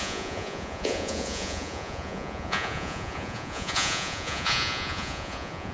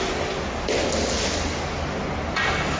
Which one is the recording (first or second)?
second